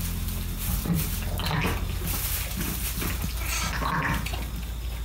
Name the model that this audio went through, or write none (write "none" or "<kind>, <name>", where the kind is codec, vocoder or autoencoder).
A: none